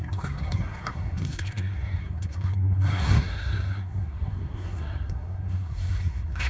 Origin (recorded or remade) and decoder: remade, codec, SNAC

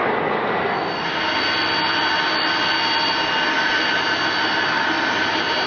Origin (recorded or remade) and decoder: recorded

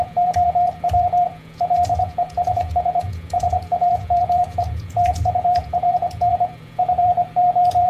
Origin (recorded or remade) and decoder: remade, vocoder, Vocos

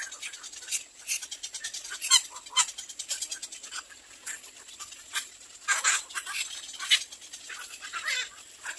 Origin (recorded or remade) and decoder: recorded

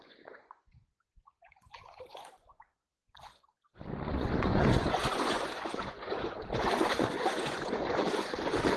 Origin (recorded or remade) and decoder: remade, vocoder, Vocos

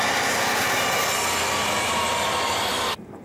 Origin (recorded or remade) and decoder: recorded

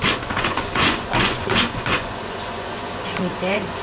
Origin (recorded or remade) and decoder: remade, vocoder, Vocos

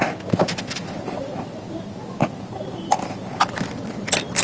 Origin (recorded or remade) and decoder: recorded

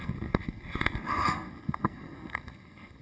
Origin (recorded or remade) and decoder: remade, codec, SNAC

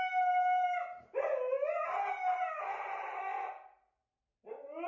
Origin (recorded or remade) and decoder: recorded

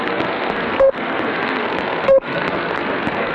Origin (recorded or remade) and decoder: remade, codec, SNAC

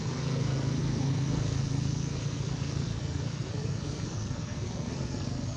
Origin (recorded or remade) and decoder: remade, codec, SNAC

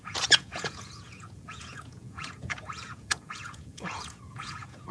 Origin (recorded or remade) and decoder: remade, vocoder, Vocos